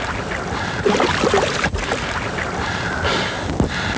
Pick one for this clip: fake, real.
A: real